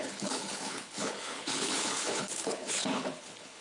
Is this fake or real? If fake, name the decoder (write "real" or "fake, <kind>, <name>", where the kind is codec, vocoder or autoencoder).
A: fake, codec, HILCodec